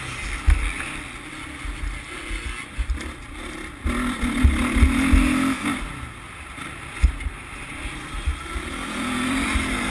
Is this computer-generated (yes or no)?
no